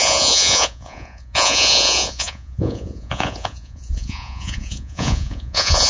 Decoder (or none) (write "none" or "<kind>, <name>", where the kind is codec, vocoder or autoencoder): vocoder, Vocos